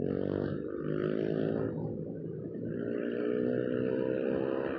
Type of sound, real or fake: fake